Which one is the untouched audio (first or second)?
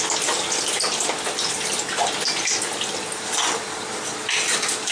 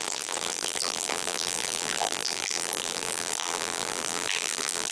first